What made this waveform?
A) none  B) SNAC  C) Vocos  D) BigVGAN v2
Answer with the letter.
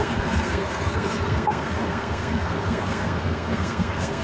B